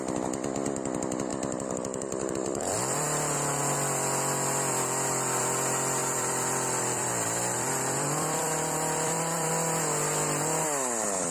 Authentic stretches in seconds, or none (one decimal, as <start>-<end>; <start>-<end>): 0.0-1.3; 3.6-6.0; 9.5-11.3